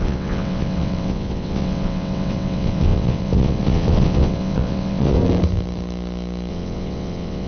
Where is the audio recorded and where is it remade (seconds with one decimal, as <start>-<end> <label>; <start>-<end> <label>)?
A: 0.0-5.2 remade; 5.2-6.5 recorded; 6.5-7.5 remade